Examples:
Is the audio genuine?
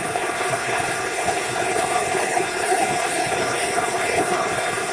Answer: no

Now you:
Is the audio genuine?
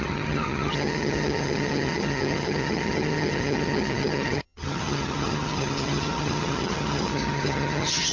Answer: no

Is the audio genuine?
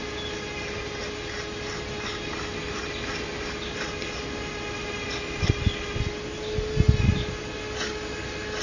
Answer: yes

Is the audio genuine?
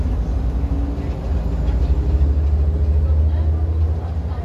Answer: yes